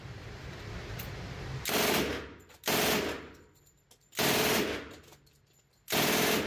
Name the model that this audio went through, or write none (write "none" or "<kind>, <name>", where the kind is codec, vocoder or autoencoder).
none